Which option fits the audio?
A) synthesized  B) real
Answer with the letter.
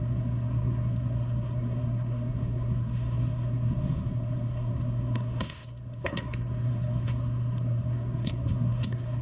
A